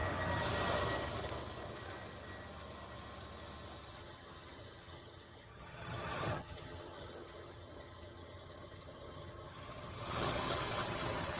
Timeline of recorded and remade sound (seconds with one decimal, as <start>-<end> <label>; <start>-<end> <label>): 0.0-3.9 recorded; 3.9-11.4 remade